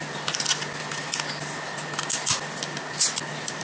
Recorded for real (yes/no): yes